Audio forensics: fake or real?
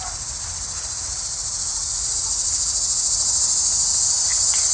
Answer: real